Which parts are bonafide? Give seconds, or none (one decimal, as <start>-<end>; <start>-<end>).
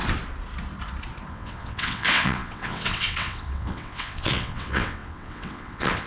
0.0-1.3